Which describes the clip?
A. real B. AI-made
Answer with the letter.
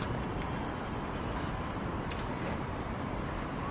A